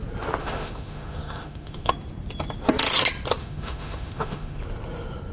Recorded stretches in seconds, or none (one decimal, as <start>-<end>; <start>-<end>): 0.0-0.4; 1.9-3.4; 4.6-5.3